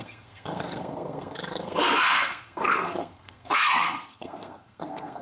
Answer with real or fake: fake